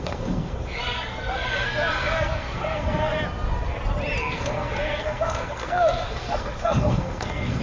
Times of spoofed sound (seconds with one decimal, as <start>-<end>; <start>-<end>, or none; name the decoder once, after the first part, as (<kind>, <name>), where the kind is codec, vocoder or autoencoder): 0.0-3.1 (codec, SNAC); 4.2-7.6